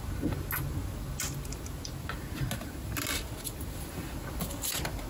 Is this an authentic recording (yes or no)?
yes